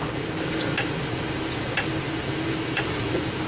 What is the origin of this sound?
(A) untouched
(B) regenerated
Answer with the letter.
A